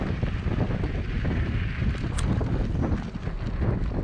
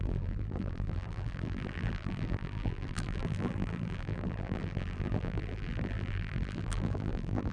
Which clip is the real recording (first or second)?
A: first